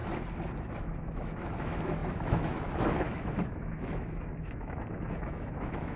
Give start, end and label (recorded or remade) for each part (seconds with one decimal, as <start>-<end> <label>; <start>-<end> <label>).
0.0-0.8 recorded; 0.8-6.0 remade